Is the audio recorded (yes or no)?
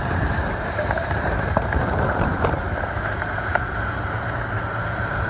no